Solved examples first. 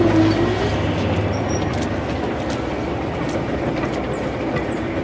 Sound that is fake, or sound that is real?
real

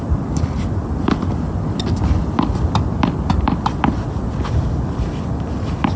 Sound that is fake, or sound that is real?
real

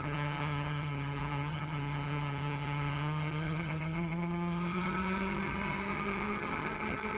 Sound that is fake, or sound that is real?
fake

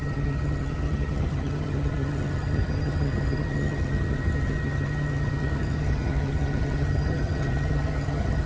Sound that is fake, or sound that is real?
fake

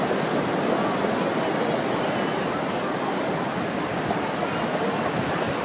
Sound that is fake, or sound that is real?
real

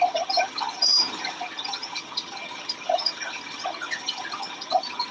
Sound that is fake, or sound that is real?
fake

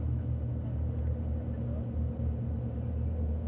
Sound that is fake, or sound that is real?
real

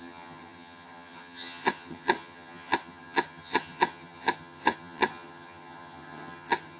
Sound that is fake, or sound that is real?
fake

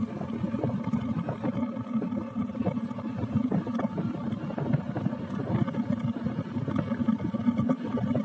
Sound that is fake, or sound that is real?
real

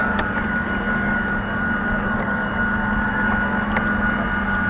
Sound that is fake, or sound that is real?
real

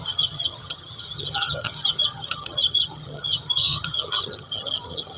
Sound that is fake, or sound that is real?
fake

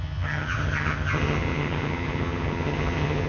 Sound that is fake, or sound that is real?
fake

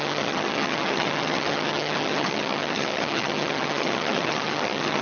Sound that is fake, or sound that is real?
fake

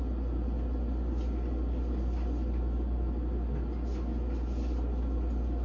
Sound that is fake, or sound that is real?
real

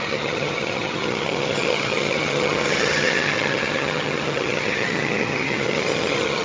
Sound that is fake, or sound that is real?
fake